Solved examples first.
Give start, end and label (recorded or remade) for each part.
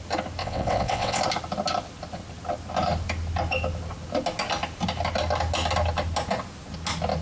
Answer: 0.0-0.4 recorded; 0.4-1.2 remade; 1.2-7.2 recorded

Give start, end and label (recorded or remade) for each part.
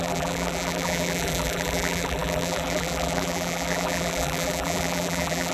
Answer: 0.0-5.5 remade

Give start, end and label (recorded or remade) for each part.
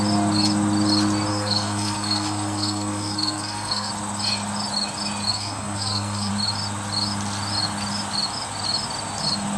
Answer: 0.0-1.3 recorded; 1.3-3.9 remade; 3.9-5.3 recorded; 5.3-6.3 remade; 6.3-9.6 recorded